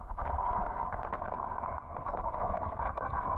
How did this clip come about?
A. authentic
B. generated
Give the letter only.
B